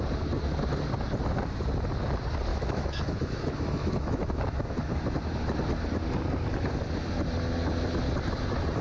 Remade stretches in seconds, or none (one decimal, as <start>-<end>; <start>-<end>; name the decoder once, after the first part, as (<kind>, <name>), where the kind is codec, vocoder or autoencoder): 2.5-4.9 (autoencoder, DAC-VAE)